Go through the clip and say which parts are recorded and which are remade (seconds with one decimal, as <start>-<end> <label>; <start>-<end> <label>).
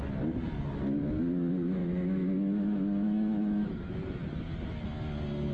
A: 0.0-1.8 recorded; 1.8-3.9 remade; 3.9-5.5 recorded